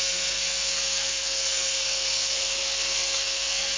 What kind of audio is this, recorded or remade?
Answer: remade